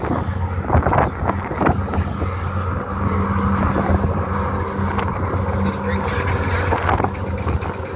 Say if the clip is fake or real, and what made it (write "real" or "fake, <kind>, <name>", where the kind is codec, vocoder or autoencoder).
real